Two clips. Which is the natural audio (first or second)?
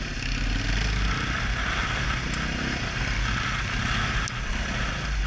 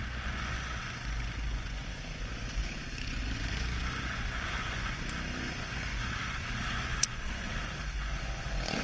first